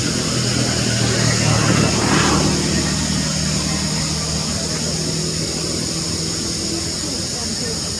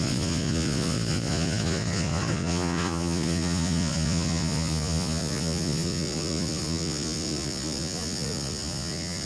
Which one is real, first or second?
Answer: first